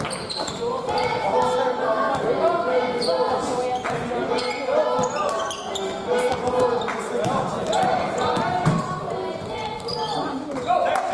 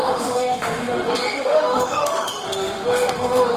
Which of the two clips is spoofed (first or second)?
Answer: second